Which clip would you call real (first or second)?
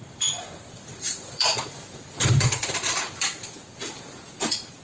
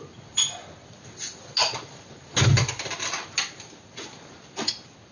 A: second